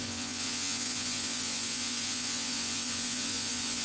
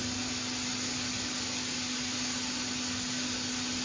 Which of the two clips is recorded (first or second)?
second